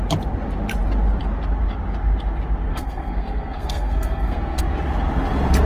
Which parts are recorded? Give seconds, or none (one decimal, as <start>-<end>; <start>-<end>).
0.0-2.7; 4.6-5.7